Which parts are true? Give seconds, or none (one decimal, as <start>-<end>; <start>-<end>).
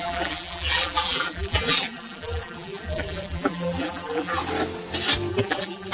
4.4-5.3